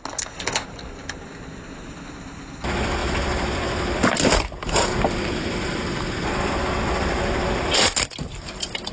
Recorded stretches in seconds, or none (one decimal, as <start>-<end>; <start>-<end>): 0.0-8.9